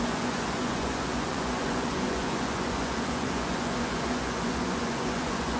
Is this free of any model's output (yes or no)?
no